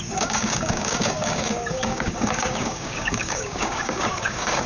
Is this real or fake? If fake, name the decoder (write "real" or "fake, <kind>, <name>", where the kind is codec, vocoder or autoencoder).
fake, codec, DAC